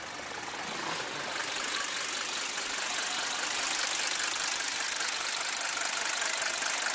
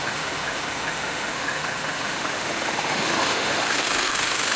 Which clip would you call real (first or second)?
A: first